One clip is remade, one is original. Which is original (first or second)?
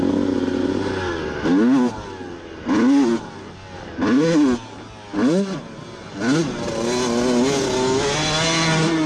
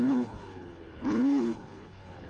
first